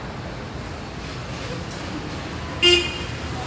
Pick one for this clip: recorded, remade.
recorded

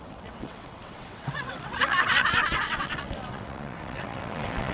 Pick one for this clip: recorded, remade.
remade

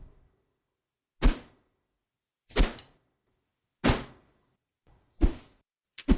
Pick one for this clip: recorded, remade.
recorded